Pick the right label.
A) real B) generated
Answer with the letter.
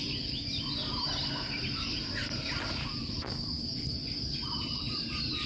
B